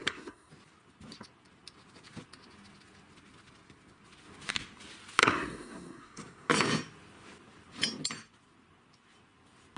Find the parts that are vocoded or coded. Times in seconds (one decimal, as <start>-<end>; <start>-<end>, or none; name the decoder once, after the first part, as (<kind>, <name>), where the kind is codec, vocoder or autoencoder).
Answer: 0.0-0.5 (codec, SNAC); 5.2-6.5